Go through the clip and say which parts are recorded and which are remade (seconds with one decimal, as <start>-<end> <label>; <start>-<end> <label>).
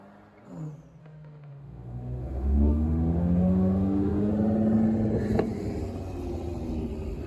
0.0-1.0 recorded; 1.0-4.3 remade; 4.3-7.3 recorded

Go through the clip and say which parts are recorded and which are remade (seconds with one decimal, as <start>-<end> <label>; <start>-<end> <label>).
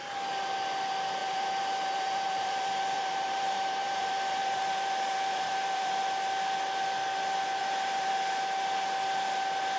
0.0-1.2 recorded; 1.2-5.9 remade; 5.9-7.6 recorded; 7.6-8.1 remade; 8.1-9.8 recorded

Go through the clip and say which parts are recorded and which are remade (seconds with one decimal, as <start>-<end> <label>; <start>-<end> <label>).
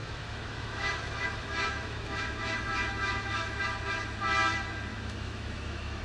0.0-3.6 remade; 3.6-4.9 recorded; 4.9-6.0 remade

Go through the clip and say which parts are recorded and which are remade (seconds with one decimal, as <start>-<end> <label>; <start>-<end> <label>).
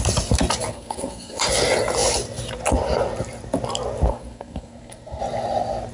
0.0-0.7 recorded; 0.7-1.5 remade; 1.5-4.1 recorded; 4.1-5.2 remade; 5.2-5.9 recorded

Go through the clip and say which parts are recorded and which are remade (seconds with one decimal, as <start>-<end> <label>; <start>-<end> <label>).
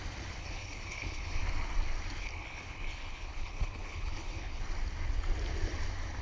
0.0-0.4 recorded; 0.4-1.4 remade; 1.4-2.2 recorded; 2.2-4.6 remade; 4.6-6.2 recorded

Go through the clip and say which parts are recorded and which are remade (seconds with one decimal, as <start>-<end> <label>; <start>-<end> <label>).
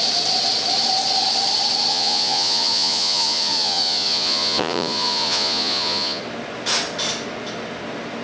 0.0-1.9 recorded; 1.9-6.2 remade; 6.2-8.2 recorded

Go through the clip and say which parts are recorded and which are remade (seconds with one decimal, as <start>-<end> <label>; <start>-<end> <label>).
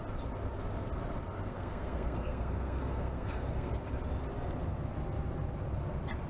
0.0-1.5 recorded; 1.5-3.7 remade; 3.7-6.3 recorded